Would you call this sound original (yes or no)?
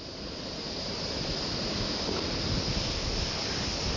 yes